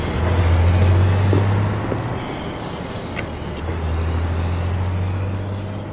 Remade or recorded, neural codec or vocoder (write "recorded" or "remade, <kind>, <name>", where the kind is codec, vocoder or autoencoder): recorded